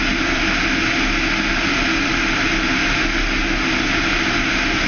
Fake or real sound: real